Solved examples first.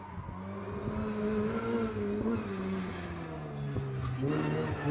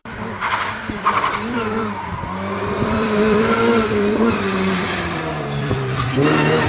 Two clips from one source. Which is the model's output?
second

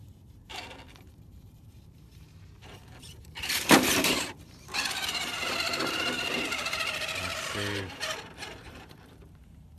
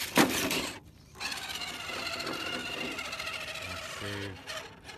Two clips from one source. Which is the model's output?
first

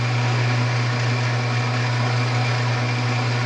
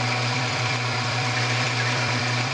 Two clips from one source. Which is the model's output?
second